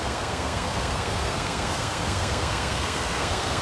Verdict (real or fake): fake